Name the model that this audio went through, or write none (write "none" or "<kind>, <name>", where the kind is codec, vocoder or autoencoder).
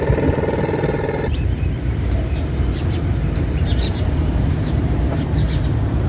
vocoder, BigVGAN v2